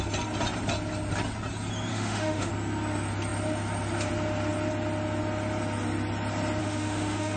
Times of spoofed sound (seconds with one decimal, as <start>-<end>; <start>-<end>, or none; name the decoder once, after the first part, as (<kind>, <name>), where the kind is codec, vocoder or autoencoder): 1.9-2.5 (autoencoder, DAC-VAE); 6.6-7.4

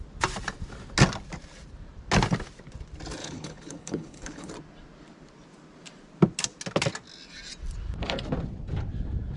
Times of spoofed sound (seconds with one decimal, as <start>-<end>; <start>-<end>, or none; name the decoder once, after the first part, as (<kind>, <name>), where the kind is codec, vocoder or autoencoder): 3.2-4.5 (codec, HILCodec)

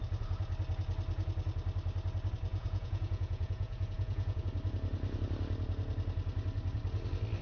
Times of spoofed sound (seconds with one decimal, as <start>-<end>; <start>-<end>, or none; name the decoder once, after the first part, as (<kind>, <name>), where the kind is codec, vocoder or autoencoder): 2.5-4.4 (vocoder, Vocos)

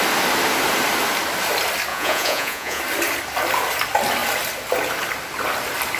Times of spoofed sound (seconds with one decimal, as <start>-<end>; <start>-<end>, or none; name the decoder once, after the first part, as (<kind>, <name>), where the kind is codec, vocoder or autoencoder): 1.9-2.8 (vocoder, Vocos)